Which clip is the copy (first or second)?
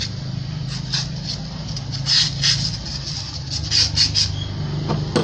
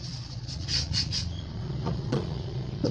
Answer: second